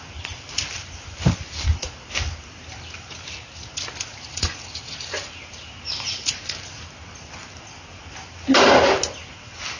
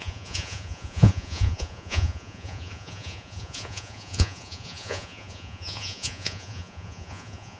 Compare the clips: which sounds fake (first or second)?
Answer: second